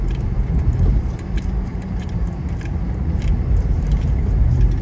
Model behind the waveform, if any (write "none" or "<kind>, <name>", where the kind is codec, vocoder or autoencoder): vocoder, BigVGAN v2